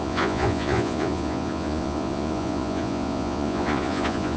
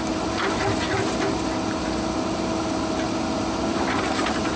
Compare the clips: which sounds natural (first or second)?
second